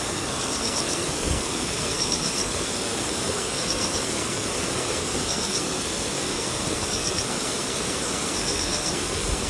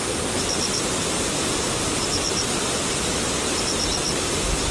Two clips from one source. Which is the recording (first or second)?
second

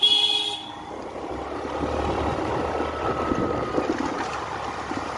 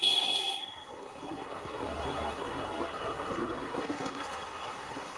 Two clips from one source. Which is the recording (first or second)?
first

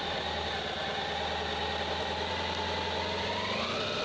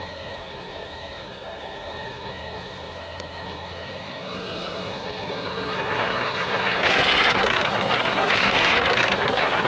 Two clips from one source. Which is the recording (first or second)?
first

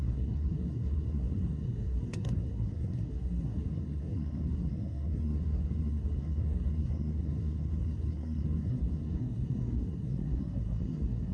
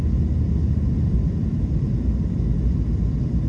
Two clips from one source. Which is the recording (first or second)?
second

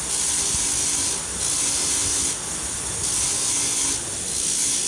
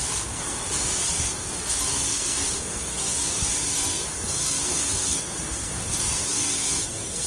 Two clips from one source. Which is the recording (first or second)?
first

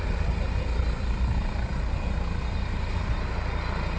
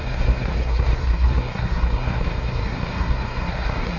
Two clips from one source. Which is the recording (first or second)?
first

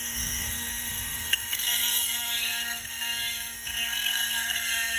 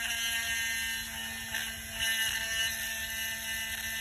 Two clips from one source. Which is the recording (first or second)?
second